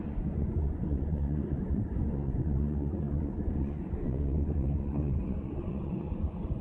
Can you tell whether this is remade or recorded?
remade